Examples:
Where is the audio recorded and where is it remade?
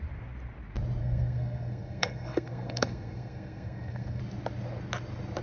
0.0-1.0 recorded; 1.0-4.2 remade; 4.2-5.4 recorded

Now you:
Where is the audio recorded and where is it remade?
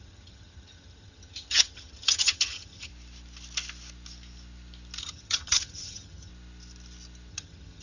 0.0-2.9 remade; 2.9-5.0 recorded; 5.0-6.3 remade; 6.3-7.3 recorded; 7.3-7.8 remade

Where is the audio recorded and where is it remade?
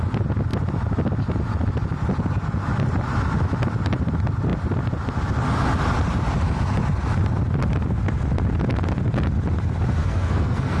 0.0-10.0 recorded; 10.0-10.8 remade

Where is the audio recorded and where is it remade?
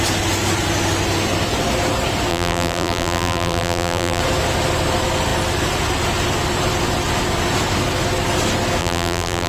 0.0-2.3 recorded; 2.3-4.2 remade; 4.2-8.8 recorded; 8.8-9.5 remade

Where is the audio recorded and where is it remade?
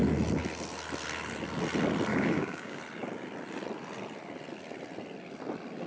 0.0-2.1 recorded; 2.1-2.8 remade; 2.8-5.9 recorded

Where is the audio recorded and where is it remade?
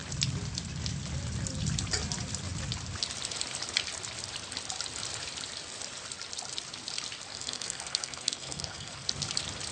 0.0-7.3 recorded; 7.3-9.1 remade; 9.1-9.7 recorded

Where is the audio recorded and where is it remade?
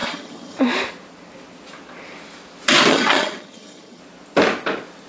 0.0-0.6 remade; 0.6-2.9 recorded; 2.9-4.0 remade; 4.0-5.1 recorded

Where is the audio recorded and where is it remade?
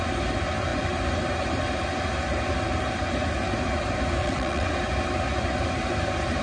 0.0-4.2 recorded; 4.2-4.7 remade; 4.7-6.4 recorded